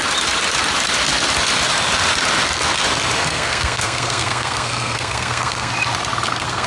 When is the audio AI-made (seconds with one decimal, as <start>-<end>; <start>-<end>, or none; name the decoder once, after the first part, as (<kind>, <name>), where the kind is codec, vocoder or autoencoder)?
3.2-5.7 (codec, SNAC); 6.3-6.7